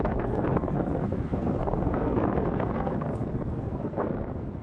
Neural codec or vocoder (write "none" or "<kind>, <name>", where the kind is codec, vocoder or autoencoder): codec, SNAC